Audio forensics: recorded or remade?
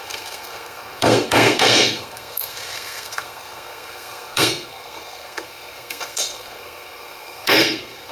remade